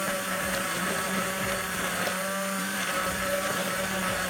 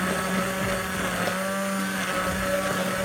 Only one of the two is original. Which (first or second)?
second